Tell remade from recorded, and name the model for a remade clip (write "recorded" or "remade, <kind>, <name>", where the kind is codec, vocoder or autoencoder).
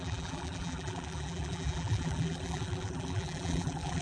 remade, vocoder, BigVGAN v2